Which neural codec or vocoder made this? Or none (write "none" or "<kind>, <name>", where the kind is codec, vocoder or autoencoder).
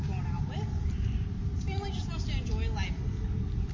none